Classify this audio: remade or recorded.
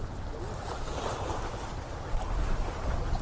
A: recorded